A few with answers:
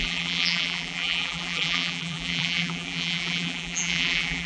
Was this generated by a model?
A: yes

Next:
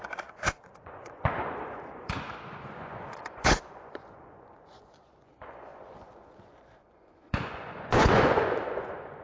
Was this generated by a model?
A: yes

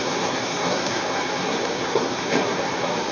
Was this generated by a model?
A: yes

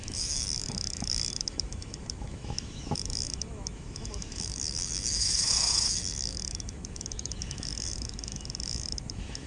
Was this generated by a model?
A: yes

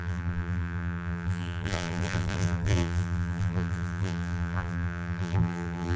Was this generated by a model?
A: yes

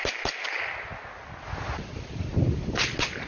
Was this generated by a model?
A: no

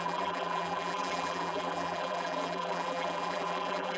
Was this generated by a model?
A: yes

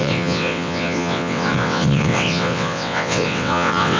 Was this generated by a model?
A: yes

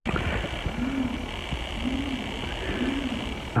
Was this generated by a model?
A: no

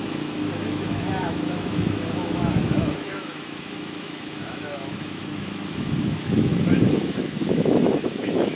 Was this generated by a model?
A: yes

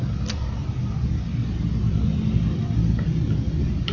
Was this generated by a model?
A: no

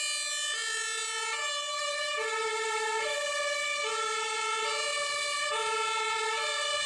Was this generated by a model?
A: no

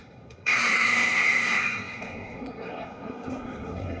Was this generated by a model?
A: yes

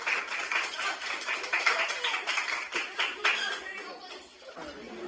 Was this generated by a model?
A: no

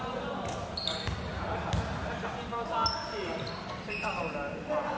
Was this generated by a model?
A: no